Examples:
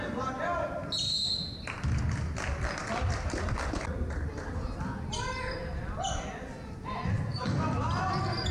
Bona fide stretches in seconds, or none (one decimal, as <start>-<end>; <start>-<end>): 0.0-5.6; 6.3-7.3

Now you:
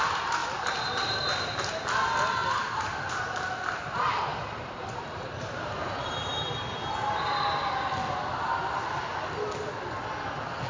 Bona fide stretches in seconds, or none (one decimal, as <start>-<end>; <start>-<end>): 0.0-0.4; 1.7-4.3; 5.7-10.7

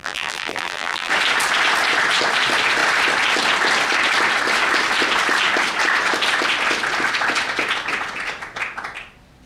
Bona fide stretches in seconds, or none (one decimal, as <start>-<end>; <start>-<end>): 1.1-9.5

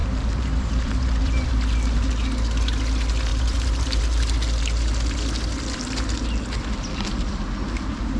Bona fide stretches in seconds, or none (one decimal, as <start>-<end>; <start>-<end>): 1.5-3.3; 4.0-8.2